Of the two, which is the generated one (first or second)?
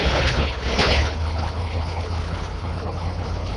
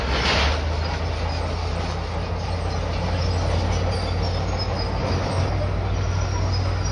first